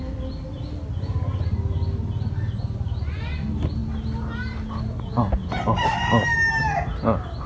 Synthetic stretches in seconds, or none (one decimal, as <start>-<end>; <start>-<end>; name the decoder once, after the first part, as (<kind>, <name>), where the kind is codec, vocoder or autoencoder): none